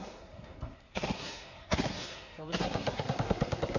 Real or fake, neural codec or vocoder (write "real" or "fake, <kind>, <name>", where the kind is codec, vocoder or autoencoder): fake, codec, SNAC